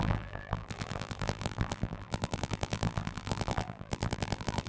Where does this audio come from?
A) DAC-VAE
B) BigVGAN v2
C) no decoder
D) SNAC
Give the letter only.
B